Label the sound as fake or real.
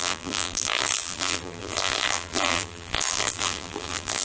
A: fake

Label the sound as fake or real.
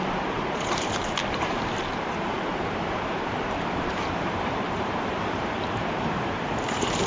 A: fake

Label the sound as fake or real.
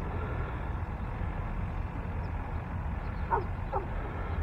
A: real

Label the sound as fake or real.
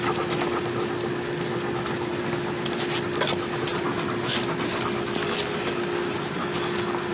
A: real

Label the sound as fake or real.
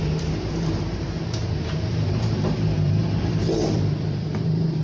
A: fake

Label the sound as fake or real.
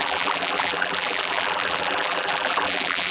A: fake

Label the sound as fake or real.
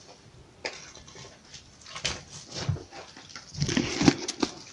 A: real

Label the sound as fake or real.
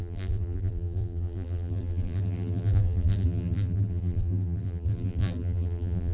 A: fake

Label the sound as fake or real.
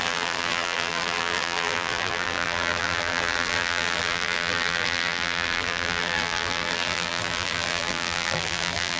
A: fake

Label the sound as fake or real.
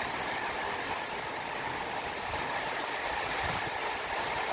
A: fake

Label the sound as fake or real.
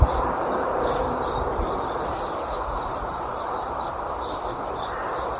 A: fake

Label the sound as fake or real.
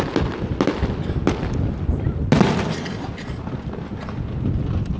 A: real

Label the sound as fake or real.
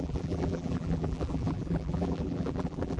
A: fake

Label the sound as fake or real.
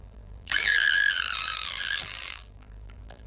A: fake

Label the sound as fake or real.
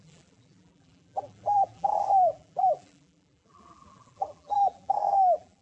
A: fake